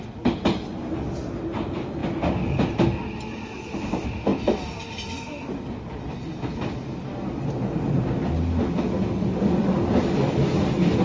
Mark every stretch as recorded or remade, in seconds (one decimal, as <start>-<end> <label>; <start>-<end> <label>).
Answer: 0.0-11.0 recorded